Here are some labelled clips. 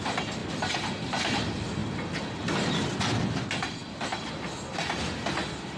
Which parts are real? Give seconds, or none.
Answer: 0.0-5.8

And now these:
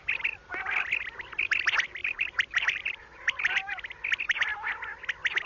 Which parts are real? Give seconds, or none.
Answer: 0.0-2.0; 3.9-5.5

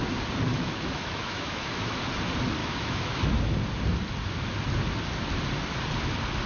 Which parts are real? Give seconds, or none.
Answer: 0.0-0.5; 2.0-2.6; 3.4-6.5